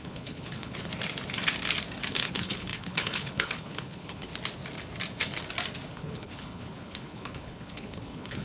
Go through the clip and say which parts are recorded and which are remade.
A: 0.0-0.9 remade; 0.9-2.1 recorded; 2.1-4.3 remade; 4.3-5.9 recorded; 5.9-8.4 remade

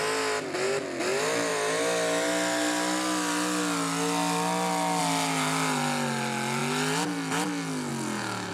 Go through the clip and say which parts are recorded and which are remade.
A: 0.0-8.5 recorded

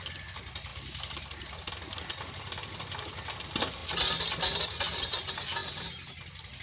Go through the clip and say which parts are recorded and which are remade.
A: 0.0-0.7 recorded; 0.7-1.7 remade; 1.7-5.6 recorded; 5.6-6.6 remade

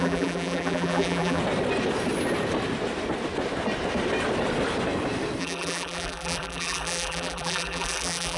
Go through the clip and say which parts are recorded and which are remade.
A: 0.0-1.4 remade; 1.4-5.4 recorded; 5.4-8.4 remade

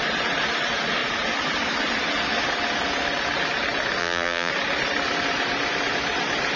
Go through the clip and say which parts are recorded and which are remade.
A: 0.0-4.0 recorded; 4.0-4.5 remade; 4.5-6.6 recorded

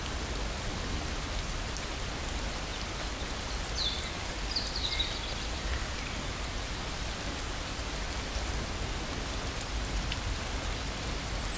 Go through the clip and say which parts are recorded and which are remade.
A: 0.0-11.6 recorded